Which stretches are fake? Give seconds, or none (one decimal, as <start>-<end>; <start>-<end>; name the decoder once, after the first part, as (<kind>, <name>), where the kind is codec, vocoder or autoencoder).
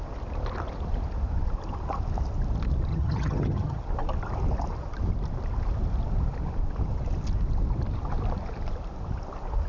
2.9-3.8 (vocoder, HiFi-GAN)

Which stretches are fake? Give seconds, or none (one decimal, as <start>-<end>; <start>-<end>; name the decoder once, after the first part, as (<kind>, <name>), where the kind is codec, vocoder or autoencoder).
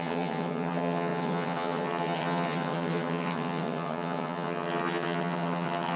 0.0-6.0 (vocoder, HiFi-GAN)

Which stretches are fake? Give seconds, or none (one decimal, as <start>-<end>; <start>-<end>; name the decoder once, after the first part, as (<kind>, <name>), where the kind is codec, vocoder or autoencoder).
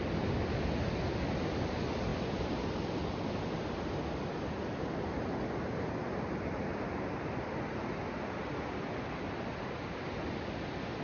none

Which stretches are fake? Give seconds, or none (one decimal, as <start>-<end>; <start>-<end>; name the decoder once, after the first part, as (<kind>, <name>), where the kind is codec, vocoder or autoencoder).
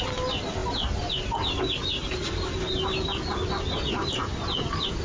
none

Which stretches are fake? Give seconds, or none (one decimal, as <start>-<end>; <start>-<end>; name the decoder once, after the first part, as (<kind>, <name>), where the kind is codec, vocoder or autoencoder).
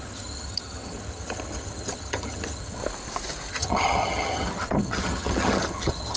0.0-2.8 (vocoder, HiFi-GAN); 3.5-6.2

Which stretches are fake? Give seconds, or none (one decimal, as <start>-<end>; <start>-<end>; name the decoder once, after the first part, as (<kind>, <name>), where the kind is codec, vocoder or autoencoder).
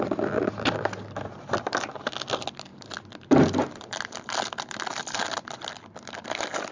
none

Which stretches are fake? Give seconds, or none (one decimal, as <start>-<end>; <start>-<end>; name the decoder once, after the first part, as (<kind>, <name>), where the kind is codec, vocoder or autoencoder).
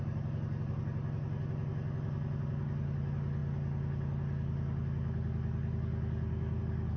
none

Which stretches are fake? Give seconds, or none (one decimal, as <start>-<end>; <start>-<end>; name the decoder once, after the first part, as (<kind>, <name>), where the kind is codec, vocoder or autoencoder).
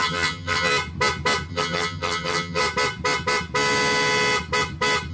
0.0-0.7 (vocoder, HiFi-GAN); 1.5-2.6